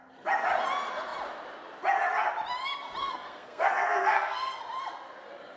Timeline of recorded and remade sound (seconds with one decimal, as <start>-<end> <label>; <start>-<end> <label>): 0.0-3.0 recorded; 3.0-4.6 remade; 4.6-5.6 recorded